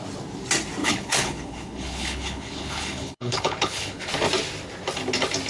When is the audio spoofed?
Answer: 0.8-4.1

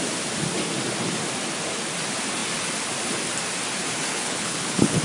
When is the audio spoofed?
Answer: 4.1-5.0

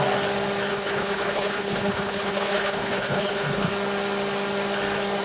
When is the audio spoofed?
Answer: 0.7-3.7